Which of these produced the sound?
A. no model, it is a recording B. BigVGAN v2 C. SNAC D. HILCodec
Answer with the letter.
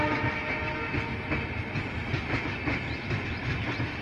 A